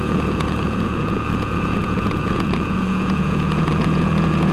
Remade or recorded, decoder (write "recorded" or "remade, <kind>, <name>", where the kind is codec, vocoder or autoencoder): remade, vocoder, Vocos